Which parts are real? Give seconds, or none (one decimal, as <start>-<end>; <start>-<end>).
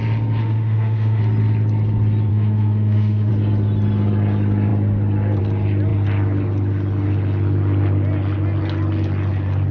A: 0.0-0.4; 1.2-2.3; 3.3-9.7